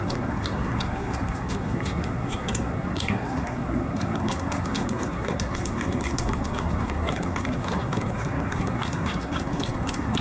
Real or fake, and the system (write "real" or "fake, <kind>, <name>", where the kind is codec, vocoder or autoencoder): fake, codec, SNAC